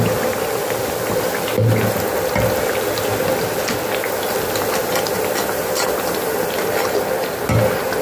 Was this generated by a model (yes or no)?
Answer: no